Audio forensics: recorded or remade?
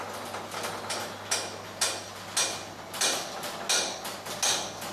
recorded